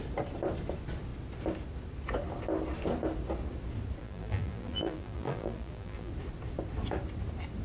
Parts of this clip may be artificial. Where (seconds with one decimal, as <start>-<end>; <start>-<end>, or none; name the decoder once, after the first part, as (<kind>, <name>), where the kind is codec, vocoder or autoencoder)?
4.0-6.1 (vocoder, BigVGAN v2)